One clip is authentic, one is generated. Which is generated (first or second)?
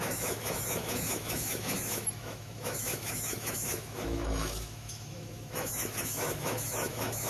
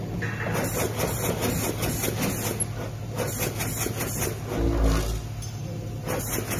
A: first